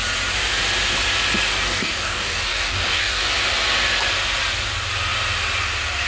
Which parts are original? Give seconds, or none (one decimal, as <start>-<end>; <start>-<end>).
0.0-1.5; 3.3-6.1